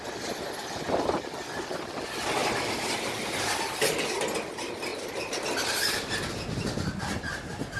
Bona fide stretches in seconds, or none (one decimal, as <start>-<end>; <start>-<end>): 0.0-7.8